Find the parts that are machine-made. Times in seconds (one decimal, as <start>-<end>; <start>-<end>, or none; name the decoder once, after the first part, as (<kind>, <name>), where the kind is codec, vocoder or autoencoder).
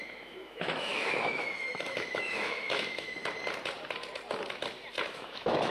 0.0-3.2 (autoencoder, DAC-VAE); 5.1-5.7